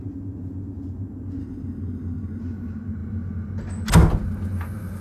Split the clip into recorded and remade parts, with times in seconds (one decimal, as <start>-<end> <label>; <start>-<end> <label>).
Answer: 0.0-1.4 recorded; 1.4-2.4 remade; 2.4-5.0 recorded